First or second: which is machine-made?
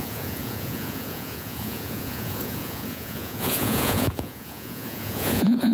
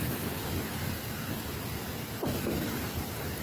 first